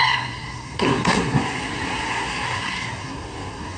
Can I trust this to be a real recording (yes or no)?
no